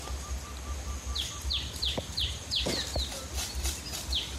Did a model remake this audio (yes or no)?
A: no